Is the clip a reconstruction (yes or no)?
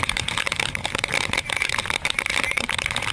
yes